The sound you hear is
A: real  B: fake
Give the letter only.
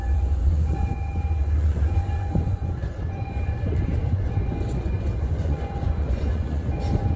B